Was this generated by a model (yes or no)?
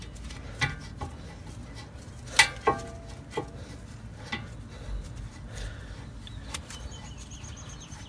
no